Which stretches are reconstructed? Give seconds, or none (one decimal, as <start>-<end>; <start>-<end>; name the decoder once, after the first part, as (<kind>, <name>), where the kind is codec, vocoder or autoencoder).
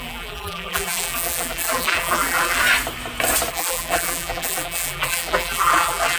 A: 0.0-2.6 (vocoder, BigVGAN v2); 3.5-6.2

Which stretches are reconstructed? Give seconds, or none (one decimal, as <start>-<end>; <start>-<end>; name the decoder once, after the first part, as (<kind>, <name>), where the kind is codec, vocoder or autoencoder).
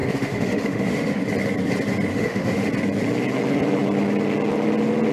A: 0.0-1.2 (autoencoder, DAC-VAE); 2.1-2.7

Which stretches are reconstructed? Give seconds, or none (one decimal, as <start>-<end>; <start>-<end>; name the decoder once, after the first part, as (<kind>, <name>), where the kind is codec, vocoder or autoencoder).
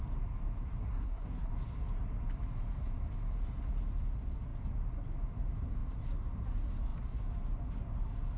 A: 0.8-1.5 (codec, SNAC)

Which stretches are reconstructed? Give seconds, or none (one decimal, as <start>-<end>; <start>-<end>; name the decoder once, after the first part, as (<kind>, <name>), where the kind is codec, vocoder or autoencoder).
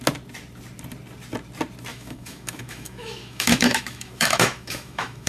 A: 1.9-5.3 (autoencoder, DAC-VAE)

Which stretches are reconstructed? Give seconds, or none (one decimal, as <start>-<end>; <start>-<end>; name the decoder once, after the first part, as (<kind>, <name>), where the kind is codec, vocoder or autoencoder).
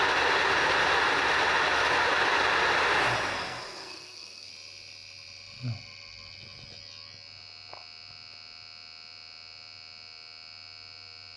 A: 3.3-4.5 (codec, SNAC)